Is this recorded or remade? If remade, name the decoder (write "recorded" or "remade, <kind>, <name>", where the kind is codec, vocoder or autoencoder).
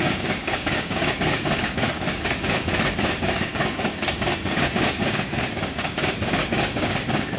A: remade, codec, DAC